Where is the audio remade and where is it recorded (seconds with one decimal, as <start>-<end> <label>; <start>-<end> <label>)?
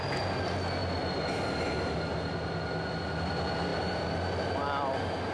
0.0-5.3 recorded